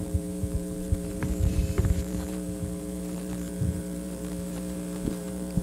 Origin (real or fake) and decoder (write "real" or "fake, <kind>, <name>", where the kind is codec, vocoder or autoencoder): fake, vocoder, BigVGAN v2